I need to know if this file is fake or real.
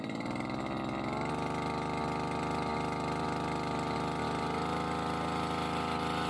real